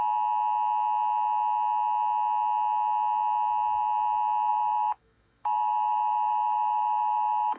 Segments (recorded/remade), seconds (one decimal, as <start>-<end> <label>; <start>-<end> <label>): 0.0-4.5 recorded; 4.5-7.6 remade